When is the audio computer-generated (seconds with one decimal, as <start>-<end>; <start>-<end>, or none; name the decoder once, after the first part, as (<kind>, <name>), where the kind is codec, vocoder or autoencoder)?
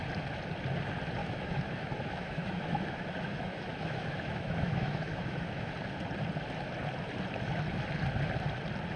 1.2-5.7 (autoencoder, DAC-VAE)